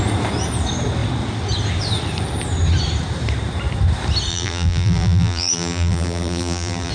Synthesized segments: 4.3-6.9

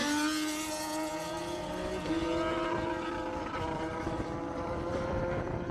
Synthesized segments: 3.4-5.7

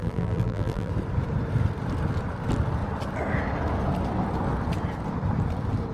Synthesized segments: 0.0-0.9

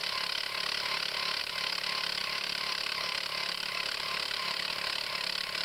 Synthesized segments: 2.2-4.7

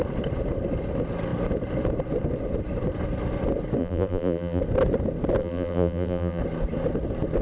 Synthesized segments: 3.8-4.6; 5.4-6.4